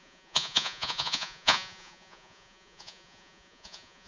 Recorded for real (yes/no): no